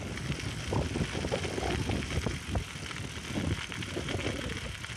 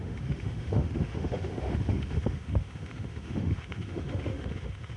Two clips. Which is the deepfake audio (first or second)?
second